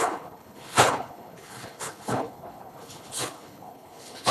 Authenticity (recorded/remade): remade